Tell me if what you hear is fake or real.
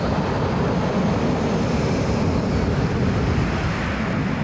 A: real